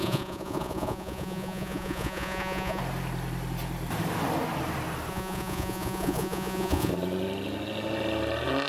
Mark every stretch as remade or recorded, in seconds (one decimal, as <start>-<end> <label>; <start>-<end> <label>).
0.0-2.8 remade; 2.8-5.1 recorded; 5.1-6.9 remade; 6.9-8.7 recorded